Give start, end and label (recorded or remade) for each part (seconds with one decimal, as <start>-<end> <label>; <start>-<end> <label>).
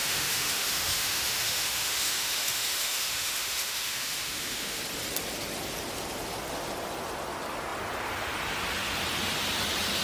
0.0-4.8 remade; 4.8-10.0 recorded